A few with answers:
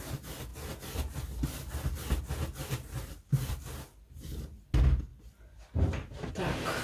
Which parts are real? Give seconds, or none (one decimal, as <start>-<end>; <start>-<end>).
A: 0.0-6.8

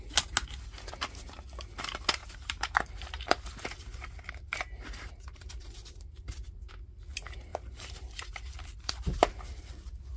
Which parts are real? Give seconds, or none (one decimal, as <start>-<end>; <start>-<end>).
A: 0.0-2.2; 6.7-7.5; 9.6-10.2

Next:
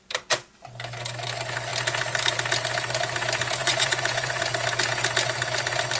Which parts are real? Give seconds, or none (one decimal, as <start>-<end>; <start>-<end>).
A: 0.0-3.6; 4.4-6.0